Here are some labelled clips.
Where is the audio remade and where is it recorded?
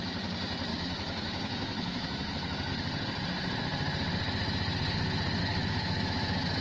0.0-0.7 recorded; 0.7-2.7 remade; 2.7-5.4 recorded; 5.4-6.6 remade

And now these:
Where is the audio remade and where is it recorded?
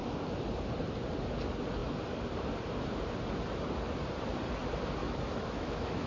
0.0-5.0 recorded; 5.0-6.1 remade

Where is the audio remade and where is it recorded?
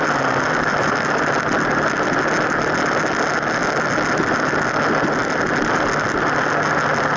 0.0-7.2 recorded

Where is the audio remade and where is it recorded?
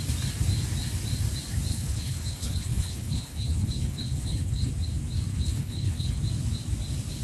0.0-1.7 recorded; 1.7-4.7 remade; 4.7-5.3 recorded; 5.3-6.2 remade; 6.2-7.2 recorded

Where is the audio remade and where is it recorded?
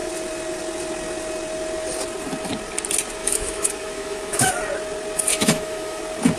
0.0-3.2 recorded; 3.2-4.5 remade; 4.5-5.3 recorded; 5.3-6.0 remade; 6.0-6.4 recorded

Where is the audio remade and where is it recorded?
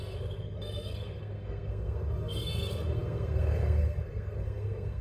0.0-5.0 remade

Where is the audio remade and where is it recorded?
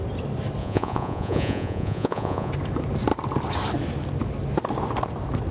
0.0-0.6 recorded; 0.6-2.5 remade; 2.5-5.5 recorded